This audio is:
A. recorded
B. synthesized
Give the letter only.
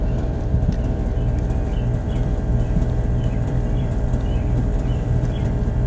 B